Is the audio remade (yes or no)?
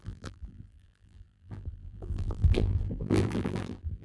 yes